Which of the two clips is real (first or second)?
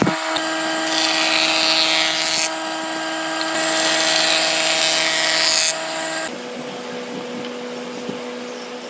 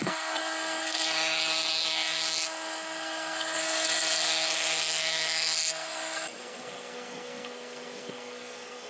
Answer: first